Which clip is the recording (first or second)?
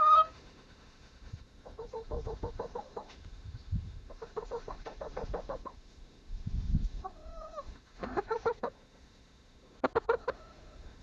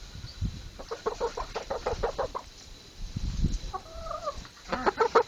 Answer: second